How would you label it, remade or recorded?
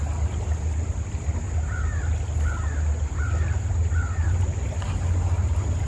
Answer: recorded